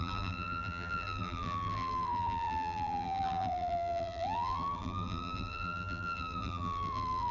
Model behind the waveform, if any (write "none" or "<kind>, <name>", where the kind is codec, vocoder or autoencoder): vocoder, BigVGAN v2